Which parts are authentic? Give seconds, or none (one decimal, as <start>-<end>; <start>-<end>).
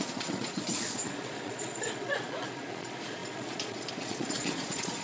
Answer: none